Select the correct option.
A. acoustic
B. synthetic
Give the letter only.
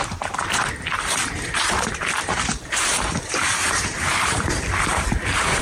B